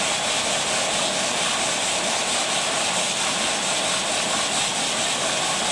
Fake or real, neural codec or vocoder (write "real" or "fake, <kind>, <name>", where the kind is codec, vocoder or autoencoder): real